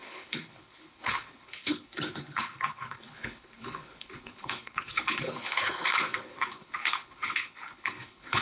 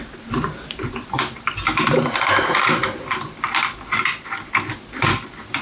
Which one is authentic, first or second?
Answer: second